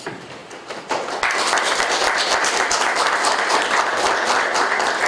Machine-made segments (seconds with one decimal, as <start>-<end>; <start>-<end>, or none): none